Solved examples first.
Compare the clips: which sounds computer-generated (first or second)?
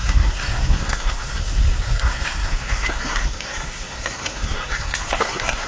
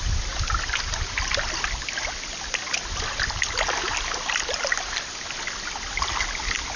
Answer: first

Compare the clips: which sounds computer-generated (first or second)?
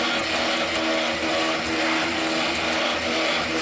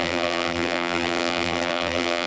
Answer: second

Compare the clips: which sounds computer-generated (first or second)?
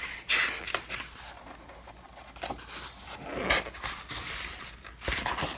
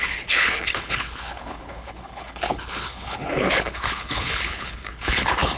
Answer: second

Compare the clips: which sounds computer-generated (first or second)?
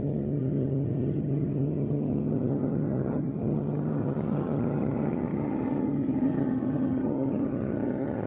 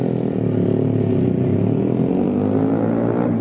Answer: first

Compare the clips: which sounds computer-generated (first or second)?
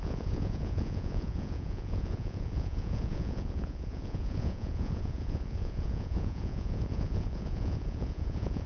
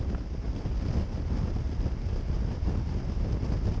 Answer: first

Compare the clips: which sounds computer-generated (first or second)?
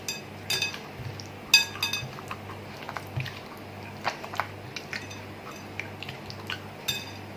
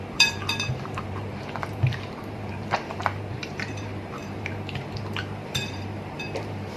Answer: second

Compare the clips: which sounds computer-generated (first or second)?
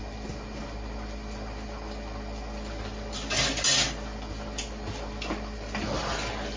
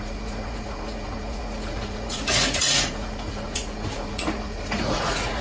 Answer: second